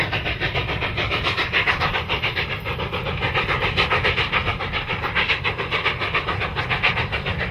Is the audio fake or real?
real